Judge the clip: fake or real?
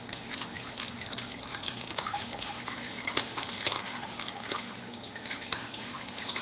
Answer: fake